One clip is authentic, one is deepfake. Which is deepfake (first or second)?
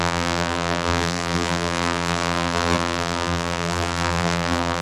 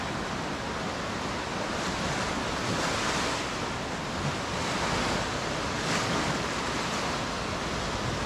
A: first